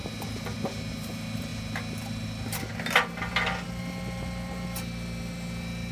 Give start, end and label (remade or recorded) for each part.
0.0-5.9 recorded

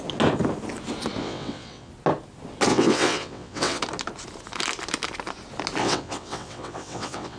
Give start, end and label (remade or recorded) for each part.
0.0-1.2 recorded; 1.2-1.9 remade; 1.9-2.7 recorded; 2.7-3.8 remade; 3.8-5.8 recorded; 5.8-7.4 remade

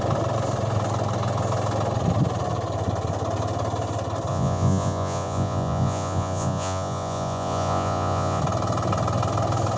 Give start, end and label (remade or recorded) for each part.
0.0-4.3 recorded; 4.3-8.4 remade; 8.4-9.8 recorded

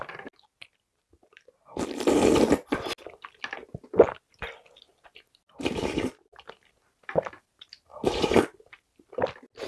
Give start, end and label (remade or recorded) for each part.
0.0-7.9 recorded; 7.9-8.4 remade; 8.4-9.7 recorded